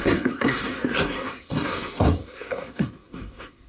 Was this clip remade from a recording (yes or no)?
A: yes